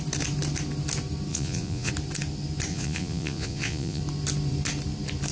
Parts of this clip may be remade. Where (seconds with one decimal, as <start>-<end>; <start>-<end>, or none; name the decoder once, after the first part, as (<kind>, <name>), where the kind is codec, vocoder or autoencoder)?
1.3-1.9 (vocoder, Vocos); 2.7-4.0